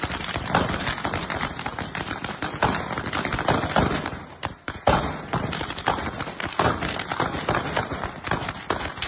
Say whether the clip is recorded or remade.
remade